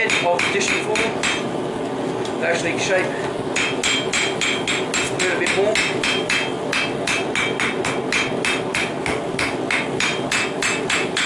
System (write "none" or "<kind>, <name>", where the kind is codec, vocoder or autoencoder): none